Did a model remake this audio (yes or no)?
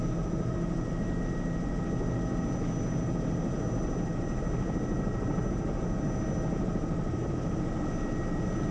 no